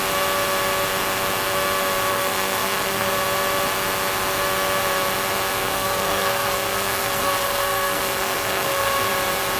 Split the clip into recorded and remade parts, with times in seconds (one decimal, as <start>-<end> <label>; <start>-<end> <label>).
0.0-2.1 recorded; 2.1-3.1 remade; 3.1-5.6 recorded; 5.6-9.1 remade; 9.1-9.6 recorded

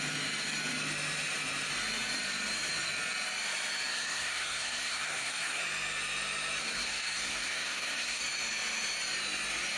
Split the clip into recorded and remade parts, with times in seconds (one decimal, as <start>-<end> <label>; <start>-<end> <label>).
0.0-3.9 recorded; 3.9-5.6 remade; 5.6-6.6 recorded; 6.6-8.2 remade; 8.2-9.8 recorded

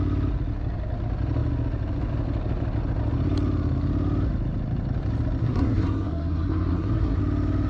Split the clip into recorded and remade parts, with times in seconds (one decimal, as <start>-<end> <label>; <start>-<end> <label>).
0.0-5.4 recorded; 5.4-7.2 remade; 7.2-7.7 recorded

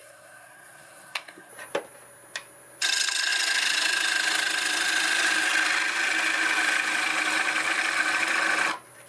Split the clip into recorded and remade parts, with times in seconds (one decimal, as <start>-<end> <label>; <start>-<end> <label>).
0.0-1.5 remade; 1.5-9.1 recorded

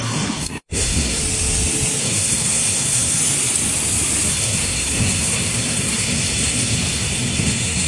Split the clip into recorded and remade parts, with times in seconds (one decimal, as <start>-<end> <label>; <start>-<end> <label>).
0.0-1.2 remade; 1.2-2.0 recorded; 2.0-3.2 remade; 3.2-4.3 recorded; 4.3-7.9 remade